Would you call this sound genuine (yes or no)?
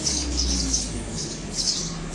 no